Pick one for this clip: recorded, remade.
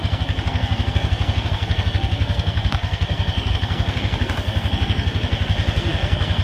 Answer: remade